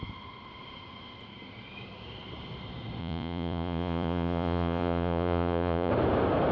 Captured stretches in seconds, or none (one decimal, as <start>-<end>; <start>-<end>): 0.0-3.0; 5.9-6.5